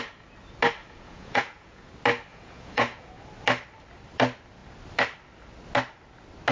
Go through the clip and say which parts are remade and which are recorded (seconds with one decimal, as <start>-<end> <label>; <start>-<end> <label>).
0.0-0.8 recorded; 0.8-1.9 remade; 1.9-2.3 recorded; 2.3-3.1 remade; 3.1-6.5 recorded

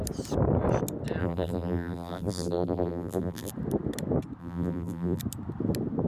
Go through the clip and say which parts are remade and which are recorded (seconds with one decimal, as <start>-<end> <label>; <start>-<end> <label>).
0.0-1.2 recorded; 1.2-3.5 remade; 3.5-4.4 recorded; 4.4-5.2 remade; 5.2-6.1 recorded

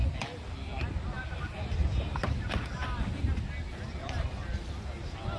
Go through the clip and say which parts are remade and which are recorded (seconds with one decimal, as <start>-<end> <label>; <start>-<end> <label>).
0.0-2.2 recorded; 2.2-2.8 remade; 2.8-5.4 recorded

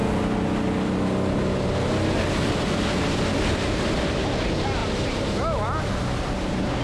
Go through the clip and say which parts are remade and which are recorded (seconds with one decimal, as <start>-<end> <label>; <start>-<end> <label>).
0.0-6.8 recorded